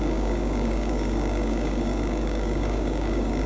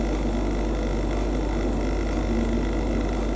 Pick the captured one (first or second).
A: second